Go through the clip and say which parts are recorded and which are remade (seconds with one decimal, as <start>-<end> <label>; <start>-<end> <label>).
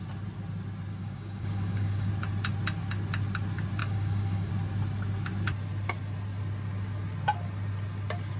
0.0-1.0 recorded; 1.0-2.1 remade; 2.1-3.8 recorded; 3.8-4.5 remade; 4.5-8.4 recorded